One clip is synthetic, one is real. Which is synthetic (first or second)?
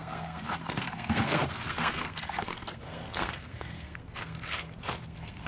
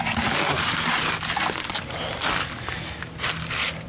first